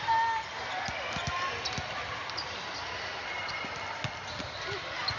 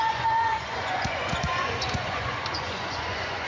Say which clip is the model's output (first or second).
second